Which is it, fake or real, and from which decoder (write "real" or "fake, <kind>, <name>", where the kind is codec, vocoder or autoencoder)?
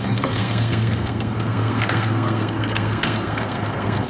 fake, codec, SNAC